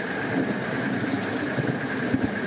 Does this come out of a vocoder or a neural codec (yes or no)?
yes